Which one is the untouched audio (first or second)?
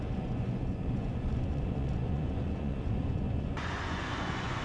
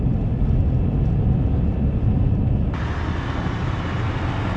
second